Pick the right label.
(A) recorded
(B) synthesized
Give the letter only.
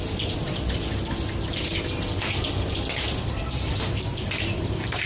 A